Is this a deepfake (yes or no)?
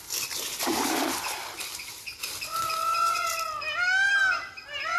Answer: no